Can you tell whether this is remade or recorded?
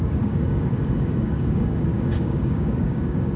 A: remade